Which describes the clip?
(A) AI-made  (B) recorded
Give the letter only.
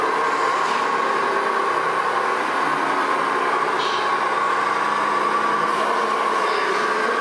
B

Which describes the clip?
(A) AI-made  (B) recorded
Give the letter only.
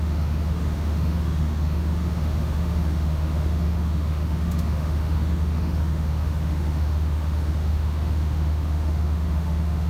A